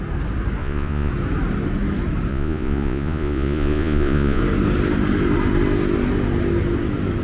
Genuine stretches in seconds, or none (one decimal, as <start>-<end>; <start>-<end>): 0.0-0.6; 1.1-2.3; 4.4-7.2